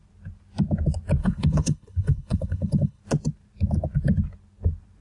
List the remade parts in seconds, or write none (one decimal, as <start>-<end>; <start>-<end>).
1.2-3.0